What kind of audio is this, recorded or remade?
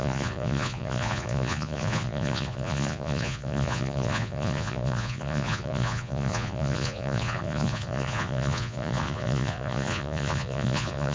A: remade